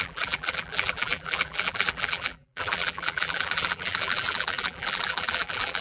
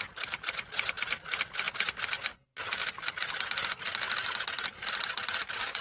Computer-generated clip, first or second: first